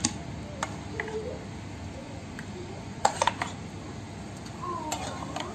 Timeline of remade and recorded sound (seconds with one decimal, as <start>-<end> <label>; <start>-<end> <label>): 0.0-2.0 recorded; 2.0-3.3 remade; 3.3-5.5 recorded